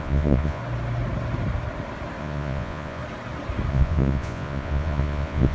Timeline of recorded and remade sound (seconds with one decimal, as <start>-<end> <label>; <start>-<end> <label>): 0.0-0.6 remade; 0.6-2.2 recorded; 2.2-3.0 remade; 3.0-3.7 recorded; 3.7-5.5 remade